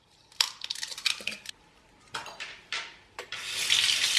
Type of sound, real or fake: fake